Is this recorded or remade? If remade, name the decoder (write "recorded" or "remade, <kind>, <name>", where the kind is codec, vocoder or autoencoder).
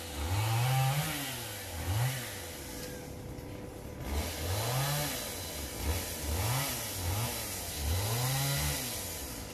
recorded